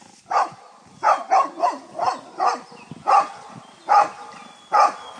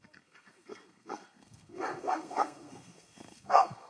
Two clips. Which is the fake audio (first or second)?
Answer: second